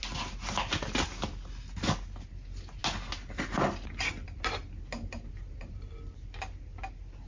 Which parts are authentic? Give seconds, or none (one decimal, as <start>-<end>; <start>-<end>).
0.0-7.3